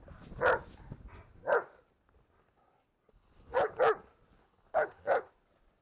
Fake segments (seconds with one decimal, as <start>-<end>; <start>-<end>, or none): 3.1-3.7; 4.4-5.3